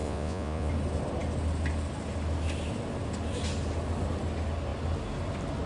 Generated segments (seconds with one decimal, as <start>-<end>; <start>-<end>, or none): 0.0-0.7